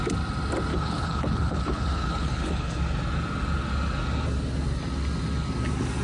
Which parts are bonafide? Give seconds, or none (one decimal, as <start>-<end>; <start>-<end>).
0.0-0.7; 2.8-6.0